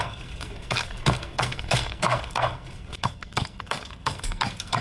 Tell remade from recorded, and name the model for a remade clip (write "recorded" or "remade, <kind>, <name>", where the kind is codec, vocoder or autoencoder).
remade, codec, SNAC